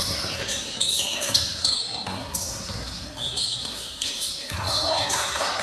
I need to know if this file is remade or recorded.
remade